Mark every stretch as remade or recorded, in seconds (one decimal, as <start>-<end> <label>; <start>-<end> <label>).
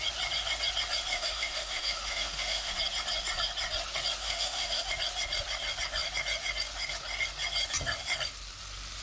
0.0-1.1 recorded; 1.1-2.7 remade; 2.7-4.2 recorded; 4.2-4.9 remade; 4.9-9.0 recorded